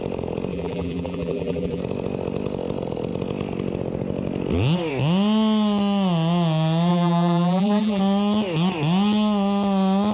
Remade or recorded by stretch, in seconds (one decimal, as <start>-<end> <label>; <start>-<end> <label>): 0.0-0.5 recorded; 0.5-1.8 remade; 1.8-6.9 recorded; 6.9-8.0 remade; 8.0-10.1 recorded